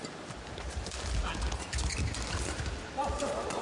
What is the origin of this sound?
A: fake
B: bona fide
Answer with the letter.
B